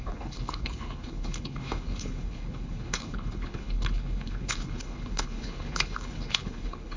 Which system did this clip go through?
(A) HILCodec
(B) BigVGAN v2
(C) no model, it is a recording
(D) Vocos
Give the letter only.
A